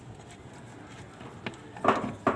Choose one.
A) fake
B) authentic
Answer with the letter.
B